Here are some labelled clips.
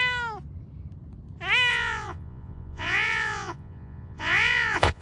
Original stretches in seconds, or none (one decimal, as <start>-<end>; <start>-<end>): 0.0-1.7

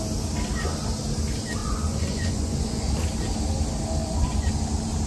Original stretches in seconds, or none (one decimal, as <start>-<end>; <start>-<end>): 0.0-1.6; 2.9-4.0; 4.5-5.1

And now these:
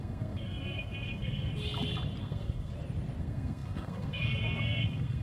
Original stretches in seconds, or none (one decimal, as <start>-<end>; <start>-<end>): 1.5-2.2; 2.7-3.2

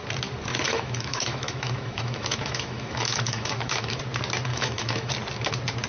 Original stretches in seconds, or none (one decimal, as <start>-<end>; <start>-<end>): 0.0-0.5; 4.0-4.5; 5.1-5.9

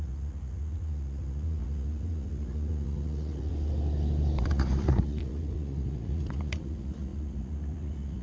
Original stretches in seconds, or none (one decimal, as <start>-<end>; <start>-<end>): 3.5-4.4

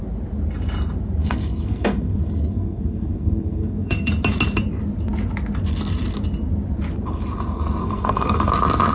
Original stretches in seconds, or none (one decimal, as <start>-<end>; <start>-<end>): 0.0-1.2; 4.1-7.8; 8.5-8.9